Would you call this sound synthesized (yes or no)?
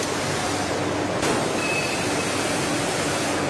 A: no